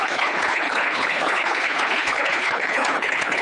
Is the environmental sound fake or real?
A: fake